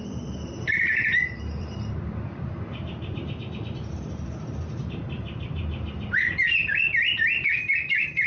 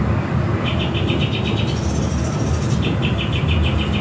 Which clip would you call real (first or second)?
second